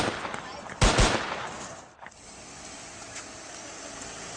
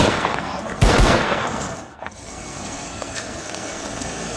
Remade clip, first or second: second